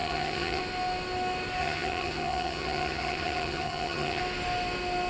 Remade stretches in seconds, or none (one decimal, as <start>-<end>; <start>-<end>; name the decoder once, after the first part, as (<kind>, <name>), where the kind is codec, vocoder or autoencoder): 0.0-0.6 (vocoder, HiFi-GAN); 1.6-4.2